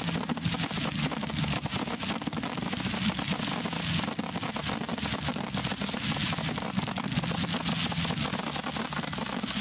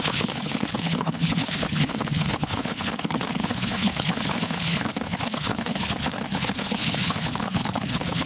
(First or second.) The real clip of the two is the first